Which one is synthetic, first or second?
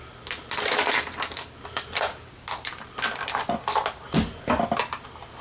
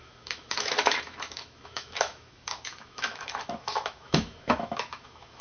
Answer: second